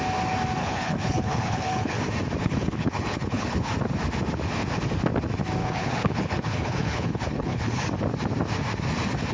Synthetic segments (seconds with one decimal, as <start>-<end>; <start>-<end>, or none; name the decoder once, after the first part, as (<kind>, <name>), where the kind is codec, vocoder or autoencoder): 0.6-2.0 (codec, HILCodec); 2.4-3.7; 5.6-7.8